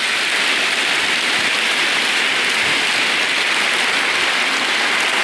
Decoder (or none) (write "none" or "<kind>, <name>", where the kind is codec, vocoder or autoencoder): none